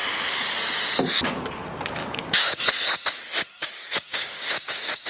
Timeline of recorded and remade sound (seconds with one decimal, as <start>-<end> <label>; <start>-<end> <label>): 0.0-2.0 recorded; 2.0-2.6 remade; 2.6-3.6 recorded; 3.6-5.1 remade